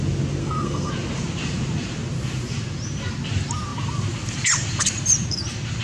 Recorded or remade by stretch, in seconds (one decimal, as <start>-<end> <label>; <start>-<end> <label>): 0.0-0.4 recorded; 0.4-0.9 remade; 0.9-5.8 recorded